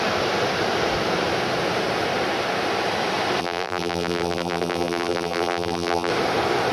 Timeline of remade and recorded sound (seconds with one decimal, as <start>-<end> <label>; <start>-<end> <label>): 0.0-3.4 recorded; 3.4-6.1 remade; 6.1-6.7 recorded